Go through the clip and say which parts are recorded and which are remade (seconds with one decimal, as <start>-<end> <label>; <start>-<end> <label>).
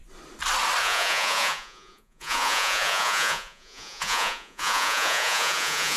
0.0-0.8 recorded; 0.8-6.0 remade